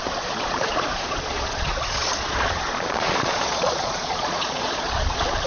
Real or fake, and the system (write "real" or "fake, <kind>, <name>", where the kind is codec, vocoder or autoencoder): fake, vocoder, Vocos